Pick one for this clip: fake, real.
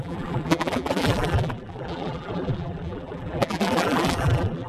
fake